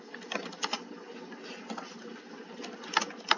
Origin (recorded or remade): recorded